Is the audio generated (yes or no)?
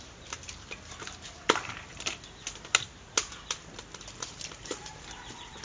yes